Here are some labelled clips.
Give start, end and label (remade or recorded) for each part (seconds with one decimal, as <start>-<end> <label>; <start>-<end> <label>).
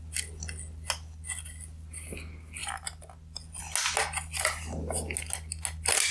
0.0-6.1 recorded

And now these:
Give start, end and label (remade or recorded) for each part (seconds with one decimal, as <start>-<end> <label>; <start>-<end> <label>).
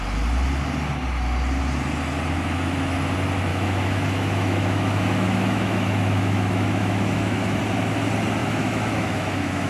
0.0-3.5 recorded; 3.5-7.6 remade; 7.6-8.4 recorded; 8.4-9.7 remade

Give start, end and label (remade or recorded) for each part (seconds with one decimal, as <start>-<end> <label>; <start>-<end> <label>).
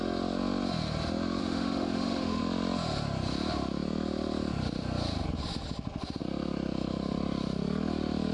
0.0-1.4 recorded; 1.4-2.4 remade; 2.4-8.3 recorded